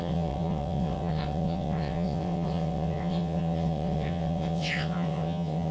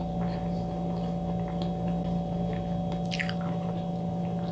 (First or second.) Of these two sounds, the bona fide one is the second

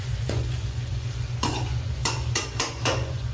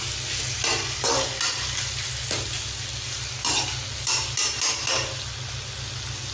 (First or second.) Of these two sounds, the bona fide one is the second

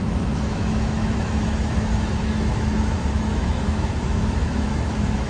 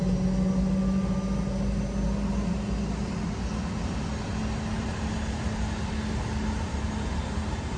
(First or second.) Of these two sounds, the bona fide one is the second